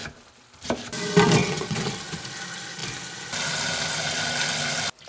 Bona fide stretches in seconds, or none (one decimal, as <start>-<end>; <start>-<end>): 0.0-1.4; 1.9-5.1